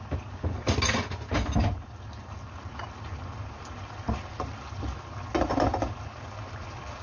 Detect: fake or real real